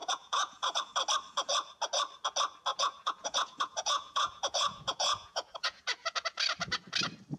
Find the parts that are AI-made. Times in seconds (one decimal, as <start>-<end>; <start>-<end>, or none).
0.0-0.9; 2.7-5.8